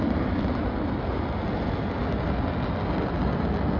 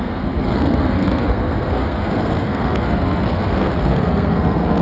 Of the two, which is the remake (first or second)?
second